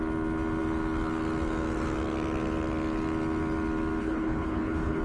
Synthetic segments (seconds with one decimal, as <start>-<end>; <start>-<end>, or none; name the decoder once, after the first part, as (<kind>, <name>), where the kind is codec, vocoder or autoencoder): 4.0-5.0 (codec, HILCodec)